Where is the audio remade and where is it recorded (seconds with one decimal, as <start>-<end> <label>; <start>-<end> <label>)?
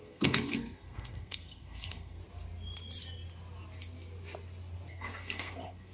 0.0-2.2 remade; 2.2-4.9 recorded; 4.9-5.9 remade